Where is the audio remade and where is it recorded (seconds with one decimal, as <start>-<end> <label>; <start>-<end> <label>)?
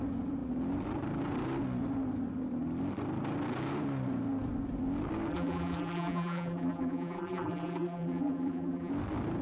0.0-5.3 recorded; 5.3-8.9 remade; 8.9-9.4 recorded